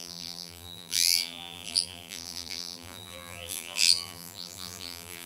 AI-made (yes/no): yes